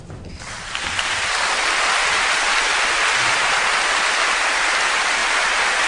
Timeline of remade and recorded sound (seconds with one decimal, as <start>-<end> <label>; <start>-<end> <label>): 0.0-5.9 recorded